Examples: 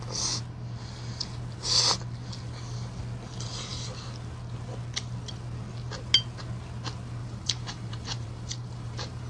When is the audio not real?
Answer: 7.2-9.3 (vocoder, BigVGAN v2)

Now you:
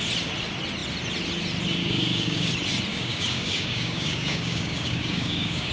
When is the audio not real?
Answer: 1.8-2.5 (codec, DAC); 2.9-5.7

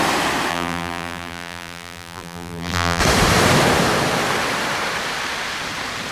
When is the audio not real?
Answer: 0.5-3.0 (vocoder, BigVGAN v2)

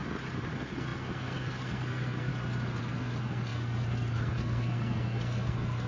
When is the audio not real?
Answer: 0.5-2.3 (codec, SNAC); 2.8-5.9

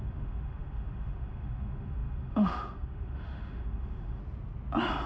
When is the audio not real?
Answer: 0.0-4.2 (autoencoder, DAC-VAE)